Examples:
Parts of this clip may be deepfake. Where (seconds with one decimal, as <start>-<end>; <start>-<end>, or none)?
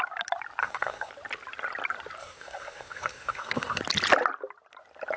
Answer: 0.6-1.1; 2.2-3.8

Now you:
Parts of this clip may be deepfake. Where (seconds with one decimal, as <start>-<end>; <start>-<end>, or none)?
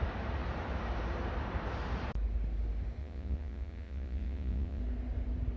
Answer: 3.0-4.8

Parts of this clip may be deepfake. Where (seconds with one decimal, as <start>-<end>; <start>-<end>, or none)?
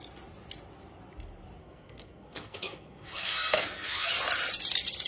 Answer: 1.6-4.1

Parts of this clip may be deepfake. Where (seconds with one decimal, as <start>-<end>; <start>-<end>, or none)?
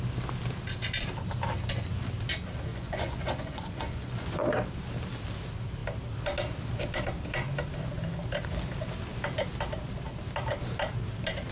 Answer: 2.7-4.5